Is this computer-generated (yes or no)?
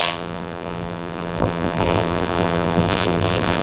yes